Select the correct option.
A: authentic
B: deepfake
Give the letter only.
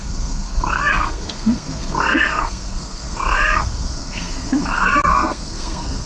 B